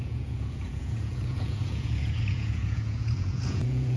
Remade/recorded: remade